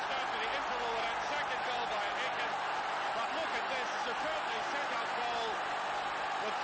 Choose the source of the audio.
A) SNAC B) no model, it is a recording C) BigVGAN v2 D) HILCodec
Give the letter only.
B